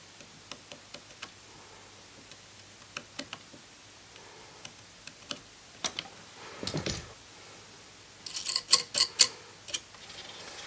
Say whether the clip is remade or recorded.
recorded